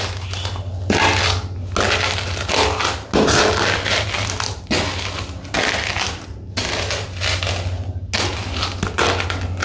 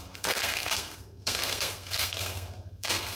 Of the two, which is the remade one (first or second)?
second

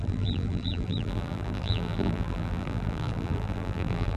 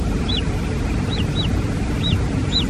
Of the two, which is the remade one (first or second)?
first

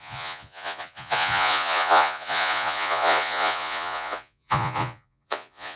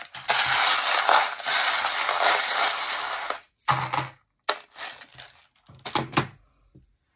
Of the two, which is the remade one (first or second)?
first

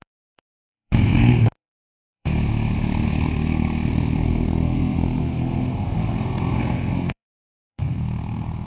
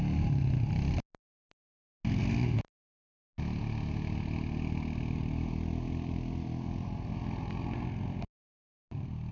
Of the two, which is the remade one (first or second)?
first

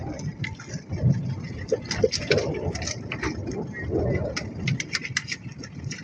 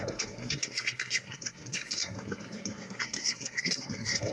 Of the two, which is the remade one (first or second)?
second